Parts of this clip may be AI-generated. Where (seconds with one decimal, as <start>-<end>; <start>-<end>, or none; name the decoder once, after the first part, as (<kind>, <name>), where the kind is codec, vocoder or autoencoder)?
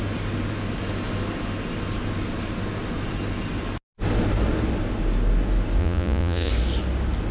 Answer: 5.8-6.5 (vocoder, Vocos)